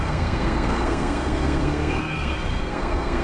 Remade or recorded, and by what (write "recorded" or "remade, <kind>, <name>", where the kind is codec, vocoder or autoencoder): remade, codec, SNAC